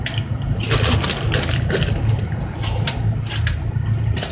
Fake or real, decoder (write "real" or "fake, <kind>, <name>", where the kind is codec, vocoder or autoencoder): real